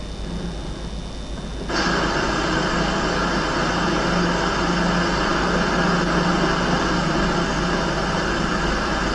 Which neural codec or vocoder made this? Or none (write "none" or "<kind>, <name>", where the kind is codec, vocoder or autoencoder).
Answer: none